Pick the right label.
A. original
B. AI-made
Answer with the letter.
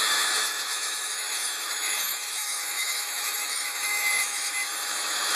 B